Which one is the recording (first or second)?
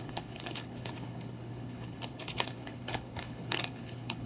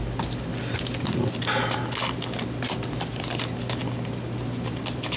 second